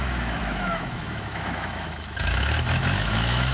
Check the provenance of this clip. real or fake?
fake